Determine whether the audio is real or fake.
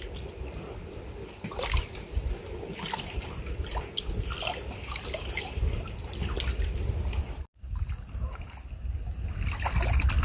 real